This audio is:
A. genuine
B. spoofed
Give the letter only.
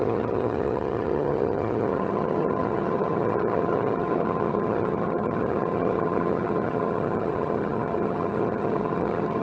B